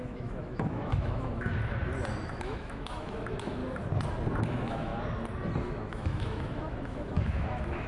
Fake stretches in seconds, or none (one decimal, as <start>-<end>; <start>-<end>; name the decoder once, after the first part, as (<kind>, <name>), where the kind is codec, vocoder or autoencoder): 0.0-1.5 (autoencoder, DAC-VAE); 2.2-3.6; 4.4-4.9; 5.6-7.9